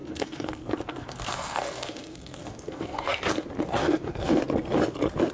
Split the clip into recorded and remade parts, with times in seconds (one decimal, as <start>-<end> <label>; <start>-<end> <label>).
0.0-3.2 remade; 3.2-3.8 recorded; 3.8-4.4 remade; 4.4-5.3 recorded